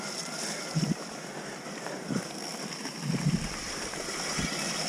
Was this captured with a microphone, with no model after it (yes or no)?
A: no